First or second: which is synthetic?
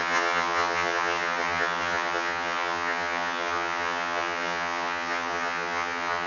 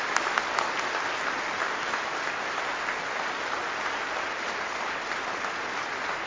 first